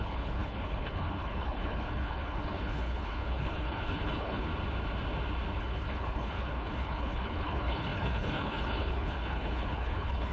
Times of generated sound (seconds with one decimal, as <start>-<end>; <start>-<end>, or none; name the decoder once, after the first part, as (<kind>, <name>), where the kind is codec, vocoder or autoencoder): 0.0-4.5 (codec, HILCodec); 5.6-10.3